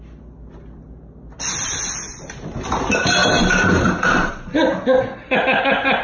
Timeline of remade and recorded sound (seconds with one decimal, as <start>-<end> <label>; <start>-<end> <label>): 0.0-3.2 recorded; 3.2-4.3 remade; 4.3-6.0 recorded